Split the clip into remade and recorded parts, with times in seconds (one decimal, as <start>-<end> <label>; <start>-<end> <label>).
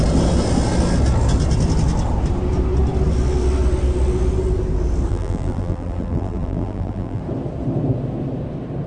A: 0.0-5.1 recorded; 5.1-7.2 remade; 7.2-8.9 recorded